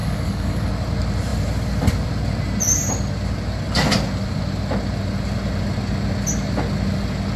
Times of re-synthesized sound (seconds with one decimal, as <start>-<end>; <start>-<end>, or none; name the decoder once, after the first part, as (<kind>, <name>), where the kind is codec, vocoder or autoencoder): 0.0-0.7 (codec, DAC)